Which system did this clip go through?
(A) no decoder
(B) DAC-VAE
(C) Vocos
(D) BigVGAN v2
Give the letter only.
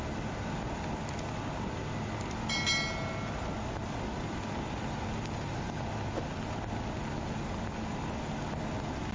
A